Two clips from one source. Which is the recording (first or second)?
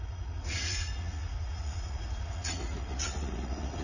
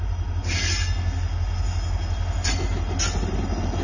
second